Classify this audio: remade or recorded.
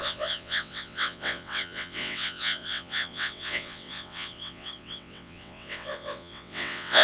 remade